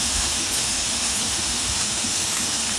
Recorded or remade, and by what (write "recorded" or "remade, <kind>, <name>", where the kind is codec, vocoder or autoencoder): remade, autoencoder, DAC-VAE